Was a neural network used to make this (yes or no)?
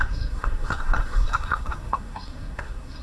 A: yes